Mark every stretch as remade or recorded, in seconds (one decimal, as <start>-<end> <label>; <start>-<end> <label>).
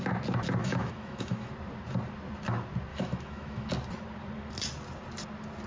0.0-0.6 recorded; 0.6-1.5 remade; 1.5-2.9 recorded; 2.9-3.7 remade; 3.7-5.7 recorded